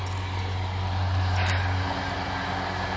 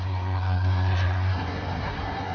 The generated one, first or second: second